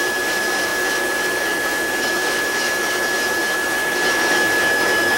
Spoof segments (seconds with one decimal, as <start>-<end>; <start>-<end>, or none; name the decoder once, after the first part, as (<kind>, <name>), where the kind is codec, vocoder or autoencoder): 0.0-5.2 (autoencoder, DAC-VAE)